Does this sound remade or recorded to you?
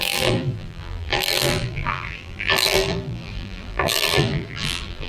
remade